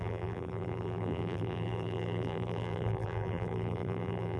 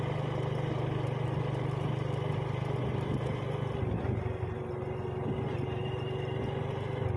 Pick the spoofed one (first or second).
first